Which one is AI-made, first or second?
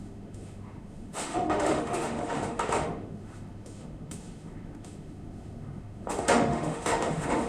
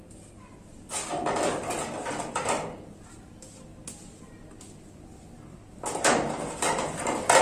first